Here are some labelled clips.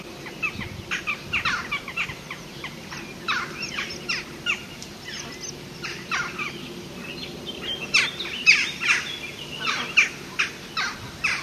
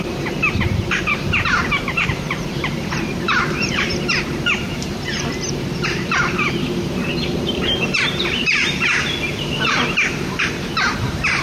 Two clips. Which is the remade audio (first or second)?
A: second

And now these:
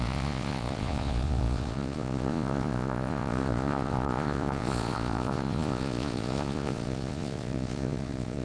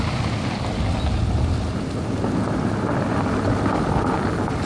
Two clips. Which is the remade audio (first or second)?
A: first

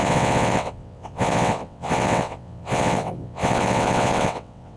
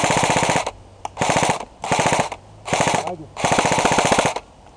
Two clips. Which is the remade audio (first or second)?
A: first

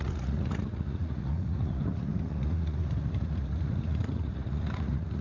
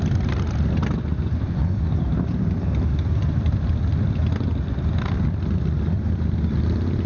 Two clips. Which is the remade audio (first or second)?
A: first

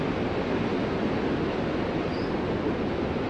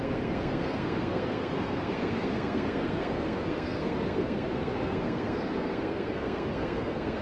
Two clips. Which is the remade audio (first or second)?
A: second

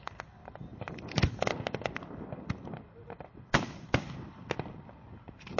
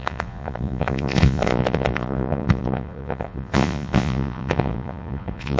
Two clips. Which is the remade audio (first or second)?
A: second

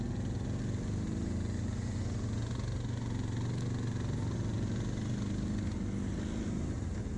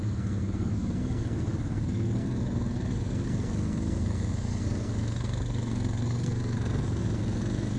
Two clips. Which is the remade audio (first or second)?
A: second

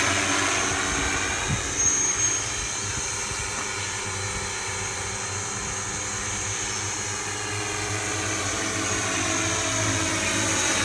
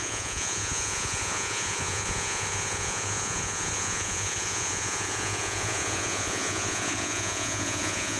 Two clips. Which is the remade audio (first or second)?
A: second